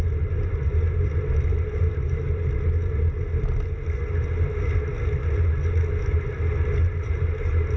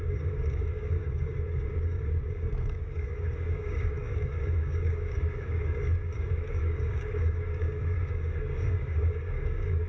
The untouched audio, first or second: first